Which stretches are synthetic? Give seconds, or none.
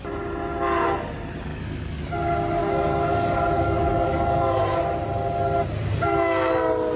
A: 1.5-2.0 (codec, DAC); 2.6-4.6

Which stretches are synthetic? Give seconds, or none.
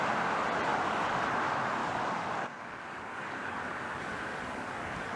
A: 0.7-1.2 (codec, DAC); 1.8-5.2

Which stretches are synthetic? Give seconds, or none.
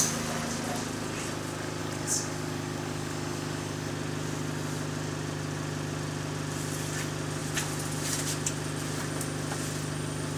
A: 1.8-3.9 (codec, DAC)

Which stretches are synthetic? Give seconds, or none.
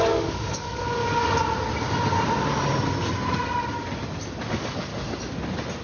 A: 0.0-1.0 (codec, DAC); 4.5-4.9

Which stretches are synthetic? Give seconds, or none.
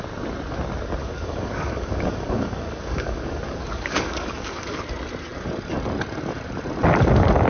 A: 1.0-4.8 (codec, DAC)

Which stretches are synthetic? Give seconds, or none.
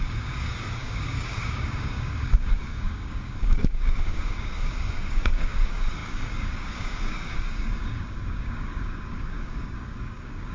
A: 0.0-10.5 (codec, DAC)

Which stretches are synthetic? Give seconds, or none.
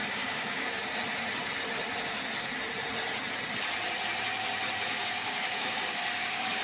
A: 0.0-0.7 (codec, DAC); 4.9-6.6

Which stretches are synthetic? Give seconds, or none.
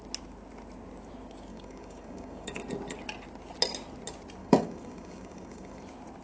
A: 1.5-2.6 (codec, DAC); 4.4-5.8